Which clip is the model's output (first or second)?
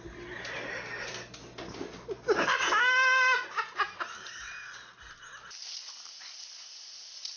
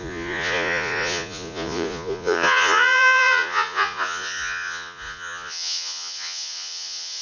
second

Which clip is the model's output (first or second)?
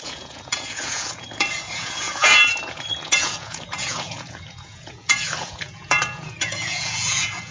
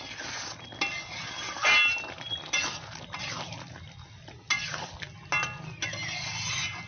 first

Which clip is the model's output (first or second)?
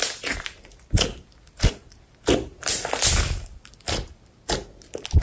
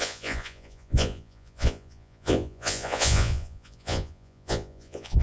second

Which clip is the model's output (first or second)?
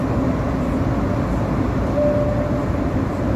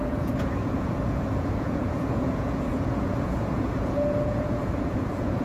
second